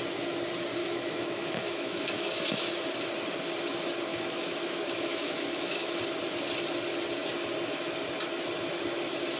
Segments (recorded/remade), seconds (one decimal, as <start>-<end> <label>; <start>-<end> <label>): 0.0-0.8 recorded; 0.8-2.4 remade; 2.4-4.1 recorded; 4.1-6.0 remade; 6.0-9.4 recorded